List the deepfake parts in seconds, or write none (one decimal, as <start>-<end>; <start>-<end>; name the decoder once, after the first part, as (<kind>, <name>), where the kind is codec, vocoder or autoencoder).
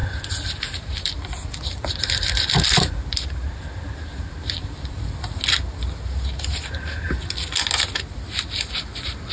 0.0-5.0 (vocoder, BigVGAN v2)